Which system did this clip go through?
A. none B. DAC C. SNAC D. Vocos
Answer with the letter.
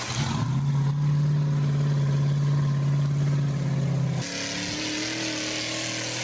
A